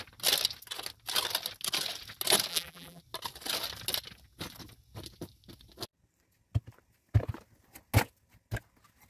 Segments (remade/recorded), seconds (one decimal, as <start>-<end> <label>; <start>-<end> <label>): 0.0-2.5 recorded; 2.5-3.0 remade; 3.0-9.1 recorded